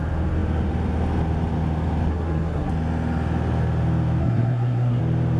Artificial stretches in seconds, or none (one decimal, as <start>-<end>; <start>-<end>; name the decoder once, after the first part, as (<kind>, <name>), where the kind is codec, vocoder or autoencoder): 2.1-2.7 (codec, SNAC); 4.2-5.0